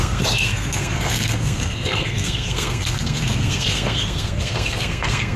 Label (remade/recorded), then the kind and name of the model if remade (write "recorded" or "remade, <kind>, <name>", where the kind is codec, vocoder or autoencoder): remade, codec, SNAC